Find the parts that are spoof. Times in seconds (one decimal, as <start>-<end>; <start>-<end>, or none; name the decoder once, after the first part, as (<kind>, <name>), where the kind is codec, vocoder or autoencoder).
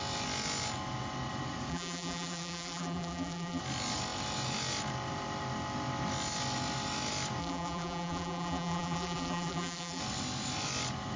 1.7-3.6 (vocoder, BigVGAN v2); 7.4-10.0